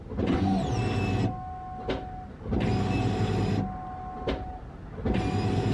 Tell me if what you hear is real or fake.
real